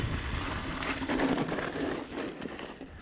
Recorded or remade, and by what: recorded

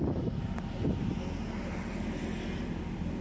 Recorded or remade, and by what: recorded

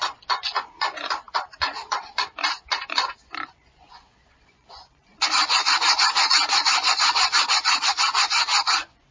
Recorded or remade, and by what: remade, vocoder, Vocos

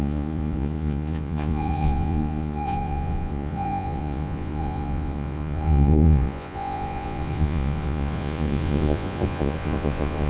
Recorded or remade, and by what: remade, vocoder, Vocos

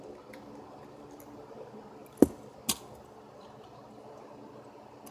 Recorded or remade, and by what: recorded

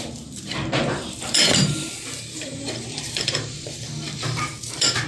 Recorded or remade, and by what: remade, vocoder, BigVGAN v2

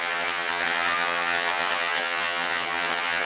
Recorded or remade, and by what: remade, vocoder, HiFi-GAN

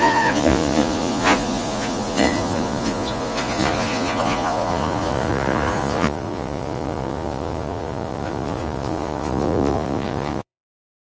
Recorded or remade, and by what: remade, vocoder, Vocos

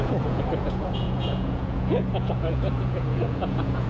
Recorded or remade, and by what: remade, vocoder, Vocos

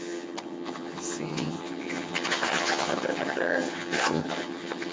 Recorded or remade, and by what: remade, vocoder, HiFi-GAN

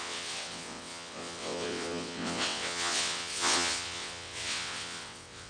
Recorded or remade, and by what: remade, vocoder, WaveNeXt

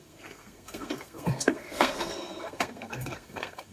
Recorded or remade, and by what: remade, codec, SNAC